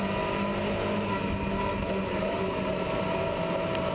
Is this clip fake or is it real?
real